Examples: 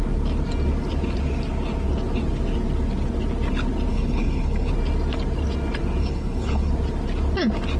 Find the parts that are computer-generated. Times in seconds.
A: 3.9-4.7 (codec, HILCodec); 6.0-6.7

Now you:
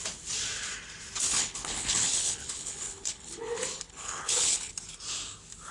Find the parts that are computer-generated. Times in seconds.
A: 1.3-4.7 (codec, HILCodec)

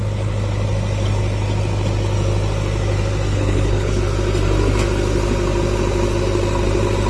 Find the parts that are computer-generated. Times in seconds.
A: 3.3-4.0 (codec, HILCodec)

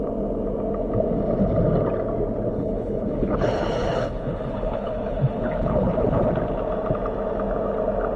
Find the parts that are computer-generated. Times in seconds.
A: 2.5-6.3 (codec, HILCodec)

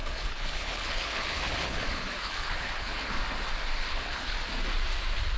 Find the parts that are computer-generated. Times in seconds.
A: 0.0-3.2 (codec, HILCodec); 3.9-4.4